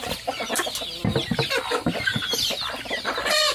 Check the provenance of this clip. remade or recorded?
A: recorded